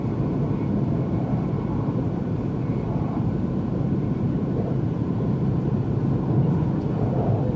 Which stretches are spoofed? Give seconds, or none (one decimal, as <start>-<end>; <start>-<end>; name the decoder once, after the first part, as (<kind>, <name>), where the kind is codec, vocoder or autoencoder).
2.7-6.0 (vocoder, BigVGAN v2)